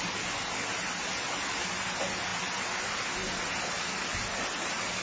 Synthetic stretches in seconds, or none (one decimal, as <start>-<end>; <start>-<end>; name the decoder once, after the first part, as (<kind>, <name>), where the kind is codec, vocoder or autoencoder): none